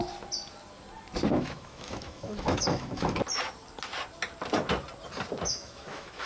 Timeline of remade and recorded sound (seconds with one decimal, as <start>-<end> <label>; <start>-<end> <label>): 0.0-1.3 recorded; 1.3-3.2 remade; 3.2-5.5 recorded; 5.5-6.3 remade